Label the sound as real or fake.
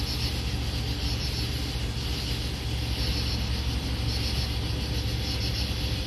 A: real